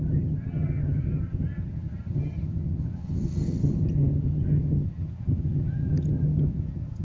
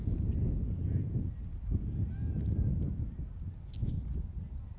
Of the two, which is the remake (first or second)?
first